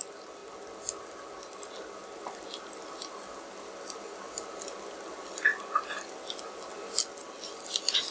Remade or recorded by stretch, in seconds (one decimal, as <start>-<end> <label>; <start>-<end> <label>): 0.0-8.1 recorded